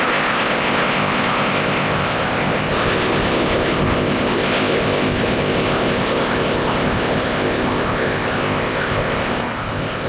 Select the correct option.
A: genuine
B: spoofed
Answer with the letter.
B